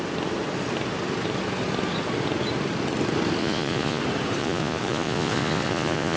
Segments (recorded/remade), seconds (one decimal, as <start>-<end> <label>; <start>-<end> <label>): 0.0-3.4 recorded; 3.4-4.0 remade; 4.0-4.4 recorded; 4.4-6.2 remade